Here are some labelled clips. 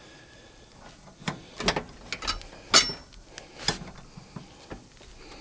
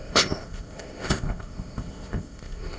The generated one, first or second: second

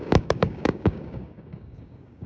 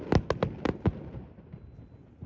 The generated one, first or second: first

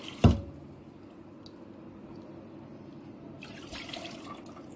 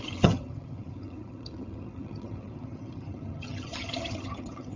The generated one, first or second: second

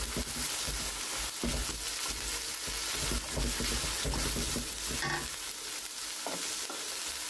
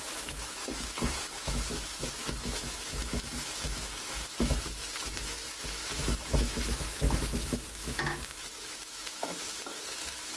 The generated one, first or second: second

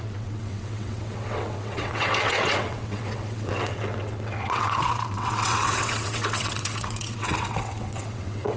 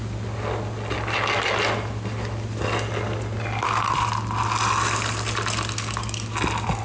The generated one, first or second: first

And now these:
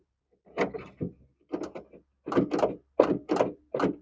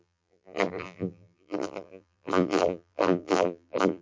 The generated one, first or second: second